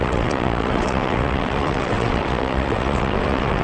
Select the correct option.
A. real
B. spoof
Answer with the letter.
B